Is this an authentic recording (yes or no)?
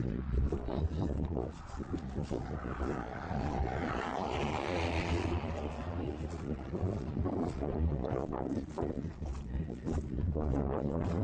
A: no